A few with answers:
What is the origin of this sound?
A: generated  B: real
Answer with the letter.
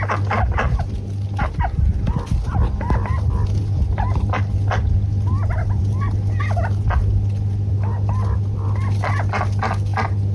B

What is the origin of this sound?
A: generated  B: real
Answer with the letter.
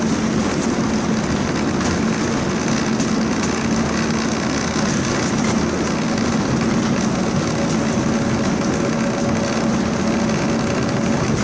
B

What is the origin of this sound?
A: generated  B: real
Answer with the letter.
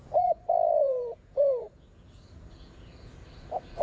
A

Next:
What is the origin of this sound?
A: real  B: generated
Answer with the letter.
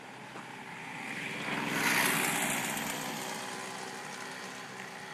A